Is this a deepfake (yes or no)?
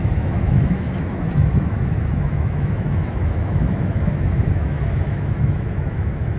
yes